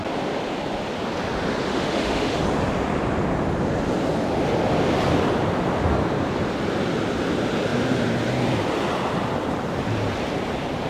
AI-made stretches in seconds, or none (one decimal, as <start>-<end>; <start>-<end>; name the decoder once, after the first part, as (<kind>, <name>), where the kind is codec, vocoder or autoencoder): 1.7-2.4 (autoencoder, DAC-VAE)